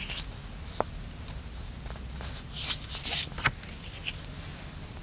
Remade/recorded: recorded